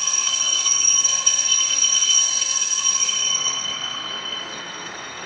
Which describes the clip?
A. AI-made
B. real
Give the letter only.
A